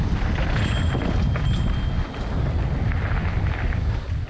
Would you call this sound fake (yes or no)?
no